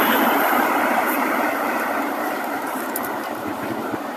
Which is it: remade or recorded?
remade